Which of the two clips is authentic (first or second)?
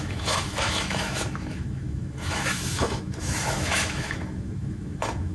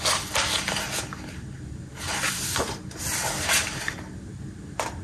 second